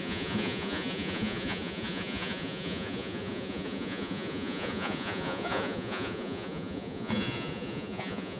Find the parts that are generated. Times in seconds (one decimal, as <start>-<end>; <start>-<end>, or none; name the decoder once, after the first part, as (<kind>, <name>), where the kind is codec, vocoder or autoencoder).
0.0-8.4 (vocoder, Vocos)